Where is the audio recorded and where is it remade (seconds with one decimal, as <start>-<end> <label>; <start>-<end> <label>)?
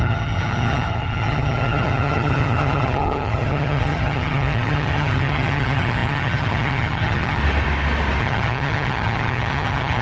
0.0-7.4 remade; 7.4-8.2 recorded; 8.2-10.0 remade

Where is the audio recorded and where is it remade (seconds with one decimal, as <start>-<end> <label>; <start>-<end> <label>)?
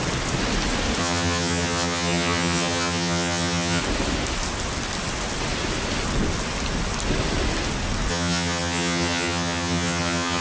0.0-1.0 recorded; 1.0-3.8 remade; 3.8-8.1 recorded; 8.1-10.4 remade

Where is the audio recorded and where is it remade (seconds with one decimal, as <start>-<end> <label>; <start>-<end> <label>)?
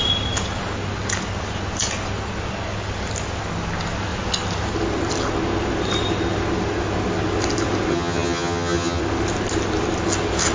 0.0-7.9 recorded; 7.9-9.0 remade; 9.0-10.5 recorded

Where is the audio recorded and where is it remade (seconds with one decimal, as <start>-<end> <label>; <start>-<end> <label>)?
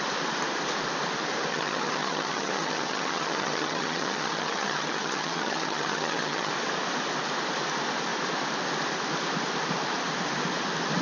0.0-1.5 recorded; 1.5-6.5 remade; 6.5-11.0 recorded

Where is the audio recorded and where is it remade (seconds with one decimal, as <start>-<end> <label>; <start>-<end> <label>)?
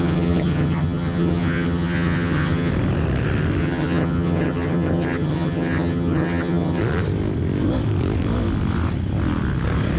0.0-2.7 remade; 2.7-3.6 recorded; 3.6-6.8 remade; 6.8-10.0 recorded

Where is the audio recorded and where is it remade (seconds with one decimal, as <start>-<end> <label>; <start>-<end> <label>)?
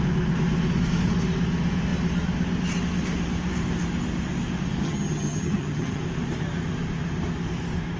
0.0-4.8 recorded; 4.8-6.0 remade; 6.0-8.0 recorded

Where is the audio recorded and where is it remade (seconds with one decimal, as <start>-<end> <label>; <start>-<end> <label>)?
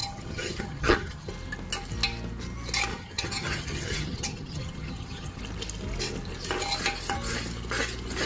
0.0-1.3 remade; 1.3-2.9 recorded; 2.9-5.4 remade; 5.4-8.3 recorded